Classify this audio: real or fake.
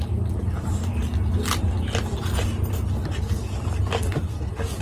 real